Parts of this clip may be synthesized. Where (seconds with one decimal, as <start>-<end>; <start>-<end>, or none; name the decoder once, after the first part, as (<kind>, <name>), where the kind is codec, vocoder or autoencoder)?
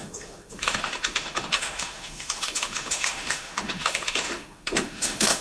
0.0-5.4 (autoencoder, DAC-VAE)